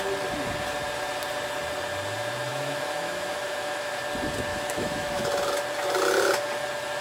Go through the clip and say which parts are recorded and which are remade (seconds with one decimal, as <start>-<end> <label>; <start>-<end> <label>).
0.0-2.5 recorded; 2.5-4.0 remade; 4.0-4.5 recorded; 4.5-5.2 remade; 5.2-7.0 recorded